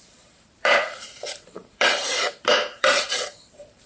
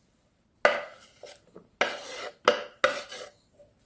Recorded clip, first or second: second